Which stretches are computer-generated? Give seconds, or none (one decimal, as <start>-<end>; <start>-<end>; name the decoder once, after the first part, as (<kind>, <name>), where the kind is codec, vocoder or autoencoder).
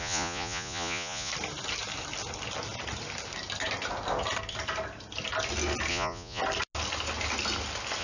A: 0.0-1.3 (vocoder, Vocos); 5.9-6.4